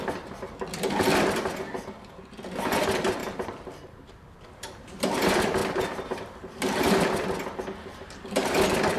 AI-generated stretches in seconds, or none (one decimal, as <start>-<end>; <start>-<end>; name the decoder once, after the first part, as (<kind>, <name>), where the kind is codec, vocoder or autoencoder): 3.2-4.1 (vocoder, BigVGAN v2); 5.6-7.3